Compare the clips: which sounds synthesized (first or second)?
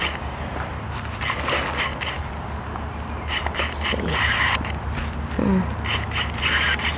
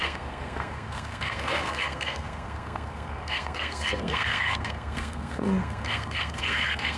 second